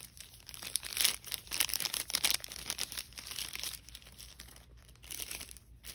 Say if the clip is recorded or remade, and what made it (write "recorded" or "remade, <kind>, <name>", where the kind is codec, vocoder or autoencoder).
remade, vocoder, BigVGAN v2